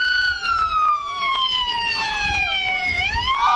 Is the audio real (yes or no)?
no